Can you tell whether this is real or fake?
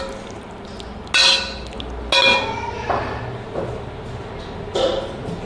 real